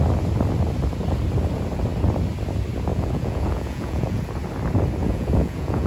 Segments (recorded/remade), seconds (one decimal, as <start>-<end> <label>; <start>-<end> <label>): 0.0-2.9 recorded; 2.9-4.2 remade; 4.2-5.0 recorded; 5.0-5.9 remade